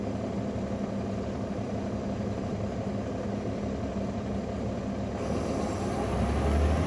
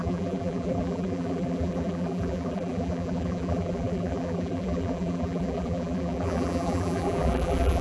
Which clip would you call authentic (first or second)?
first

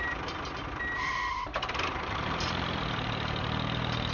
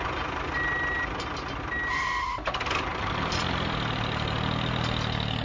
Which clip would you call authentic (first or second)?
second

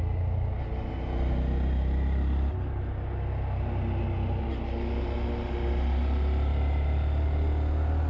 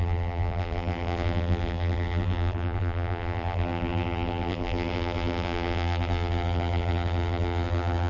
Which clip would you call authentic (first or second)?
first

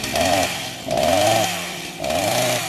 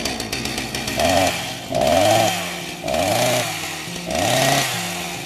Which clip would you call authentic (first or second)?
second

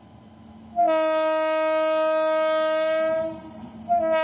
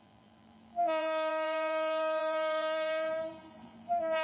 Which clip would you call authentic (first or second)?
first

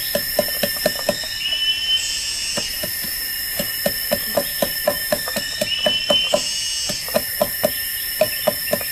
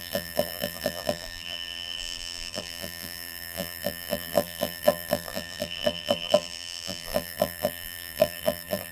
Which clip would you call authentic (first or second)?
first